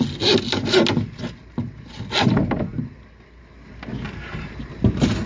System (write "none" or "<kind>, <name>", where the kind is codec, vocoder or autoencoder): none